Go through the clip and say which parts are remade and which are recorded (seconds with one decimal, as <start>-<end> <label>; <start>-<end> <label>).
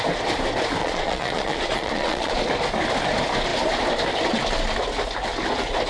0.0-0.8 recorded; 0.8-2.4 remade; 2.4-5.9 recorded